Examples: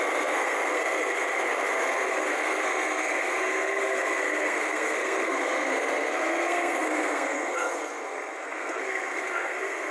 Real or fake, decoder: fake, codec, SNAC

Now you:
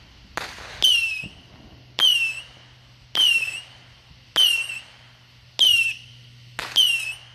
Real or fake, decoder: real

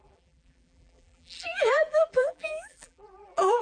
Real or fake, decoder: fake, vocoder, BigVGAN v2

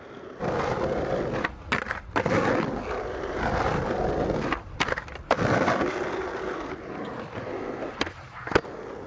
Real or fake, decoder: real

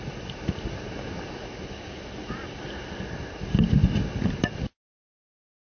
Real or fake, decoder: real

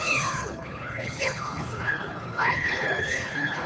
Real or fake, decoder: fake, codec, HILCodec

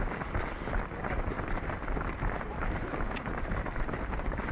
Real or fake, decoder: real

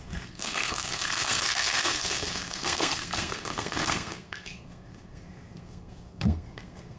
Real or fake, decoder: fake, codec, SNAC